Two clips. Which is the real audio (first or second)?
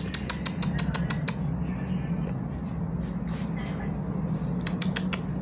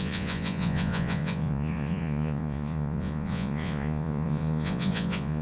first